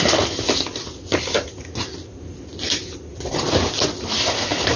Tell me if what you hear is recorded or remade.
recorded